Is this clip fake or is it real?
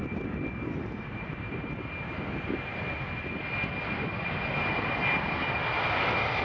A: real